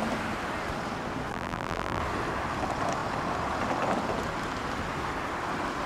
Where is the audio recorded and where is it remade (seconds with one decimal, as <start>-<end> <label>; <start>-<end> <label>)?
0.0-1.3 recorded; 1.3-2.0 remade; 2.0-5.9 recorded